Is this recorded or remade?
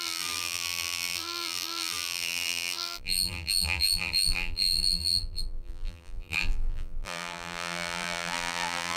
remade